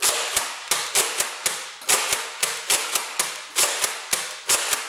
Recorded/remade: recorded